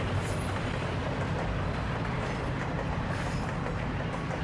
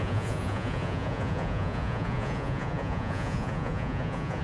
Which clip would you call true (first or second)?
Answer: first